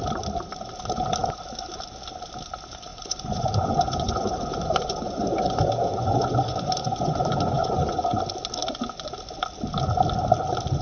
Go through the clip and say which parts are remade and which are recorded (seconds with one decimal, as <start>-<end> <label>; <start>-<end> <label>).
0.0-2.9 recorded; 2.9-8.2 remade; 8.2-10.8 recorded